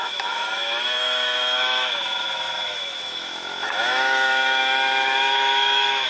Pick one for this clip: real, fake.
fake